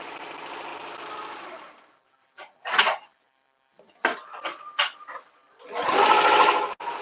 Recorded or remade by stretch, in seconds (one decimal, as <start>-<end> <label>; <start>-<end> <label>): 0.0-7.0 recorded